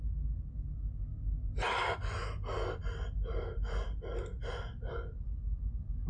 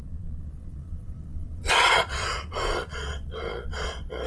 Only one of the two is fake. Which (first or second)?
second